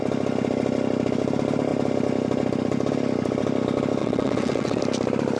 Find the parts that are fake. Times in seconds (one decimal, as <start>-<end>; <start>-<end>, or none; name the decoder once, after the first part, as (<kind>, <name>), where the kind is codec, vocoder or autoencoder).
4.0-4.8 (vocoder, WaveNeXt)